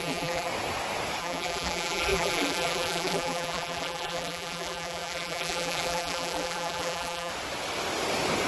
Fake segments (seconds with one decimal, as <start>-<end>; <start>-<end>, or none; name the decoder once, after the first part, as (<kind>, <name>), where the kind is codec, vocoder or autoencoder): 0.0-0.5 (vocoder, BigVGAN v2); 1.2-7.3